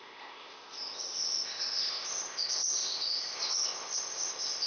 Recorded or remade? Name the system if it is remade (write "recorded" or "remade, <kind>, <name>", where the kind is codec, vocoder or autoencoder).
remade, codec, ZipCodec